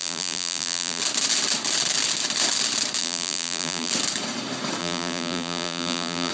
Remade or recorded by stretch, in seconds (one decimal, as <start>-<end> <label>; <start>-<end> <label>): 0.0-1.0 remade; 1.0-3.0 recorded; 3.0-3.9 remade; 3.9-4.8 recorded; 4.8-6.3 remade